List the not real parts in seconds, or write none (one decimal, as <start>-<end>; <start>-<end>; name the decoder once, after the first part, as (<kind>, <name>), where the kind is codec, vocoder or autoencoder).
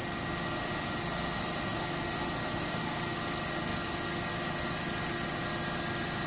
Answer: none